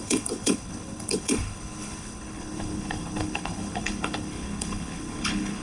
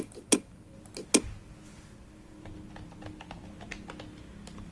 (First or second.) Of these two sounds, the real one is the second